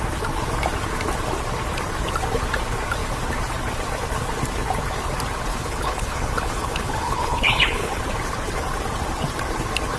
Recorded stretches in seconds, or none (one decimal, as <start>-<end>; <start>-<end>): 0.0-5.5; 8.0-10.0